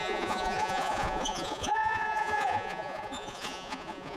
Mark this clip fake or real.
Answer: fake